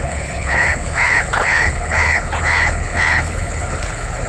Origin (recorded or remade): remade